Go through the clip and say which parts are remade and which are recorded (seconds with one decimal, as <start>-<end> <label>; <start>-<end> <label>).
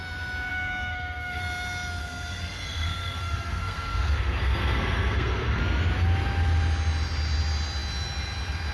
0.0-0.5 recorded; 0.5-1.4 remade; 1.4-2.0 recorded; 2.0-5.6 remade; 5.6-8.7 recorded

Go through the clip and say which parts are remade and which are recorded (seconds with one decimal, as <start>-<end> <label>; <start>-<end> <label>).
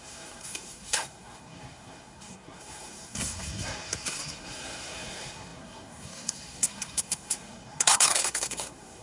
0.0-9.0 remade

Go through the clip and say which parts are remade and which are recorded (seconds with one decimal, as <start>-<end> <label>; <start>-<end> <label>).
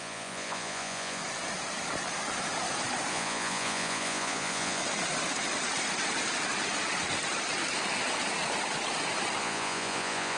0.0-1.2 remade; 1.2-3.1 recorded; 3.1-4.8 remade; 4.8-9.4 recorded; 9.4-10.4 remade